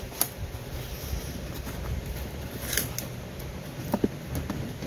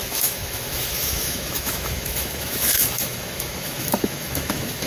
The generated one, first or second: second